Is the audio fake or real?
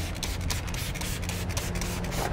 real